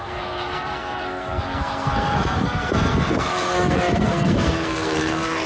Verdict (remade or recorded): remade